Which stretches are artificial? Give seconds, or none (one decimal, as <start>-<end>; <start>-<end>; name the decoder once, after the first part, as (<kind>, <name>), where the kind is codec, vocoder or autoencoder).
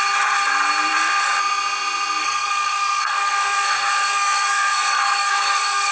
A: 2.2-5.9 (codec, SNAC)